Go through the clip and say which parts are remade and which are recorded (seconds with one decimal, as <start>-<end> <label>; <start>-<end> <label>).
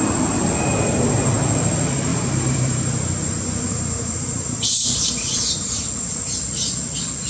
0.0-2.1 recorded; 2.1-5.8 remade; 5.8-7.3 recorded